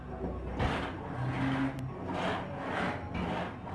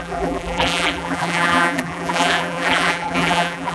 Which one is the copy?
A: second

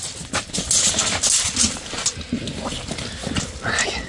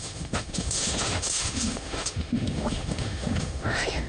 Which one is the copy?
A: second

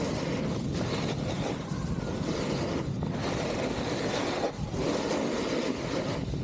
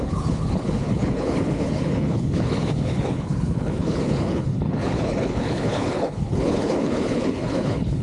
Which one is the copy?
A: second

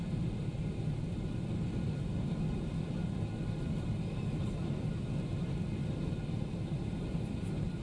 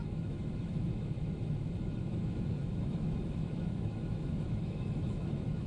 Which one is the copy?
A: second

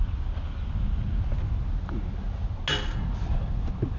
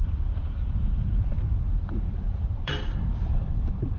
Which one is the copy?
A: second